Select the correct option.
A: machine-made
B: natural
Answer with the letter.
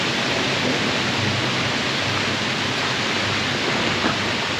B